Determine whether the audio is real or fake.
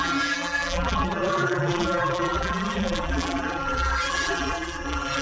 fake